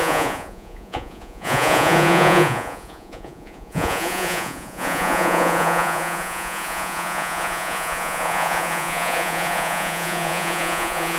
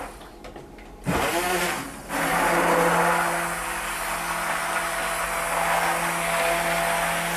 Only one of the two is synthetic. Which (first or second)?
first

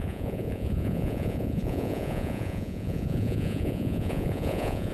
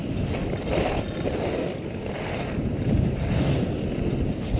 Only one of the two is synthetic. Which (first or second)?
first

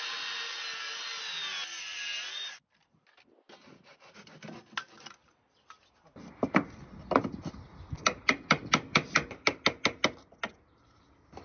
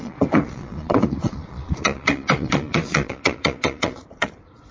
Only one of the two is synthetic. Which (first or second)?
second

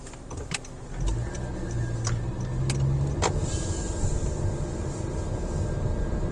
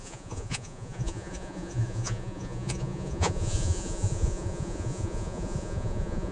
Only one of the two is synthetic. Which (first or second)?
second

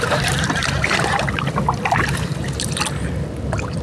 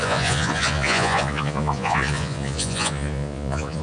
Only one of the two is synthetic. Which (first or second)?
second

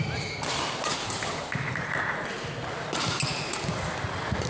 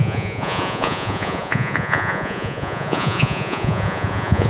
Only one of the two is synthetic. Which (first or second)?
second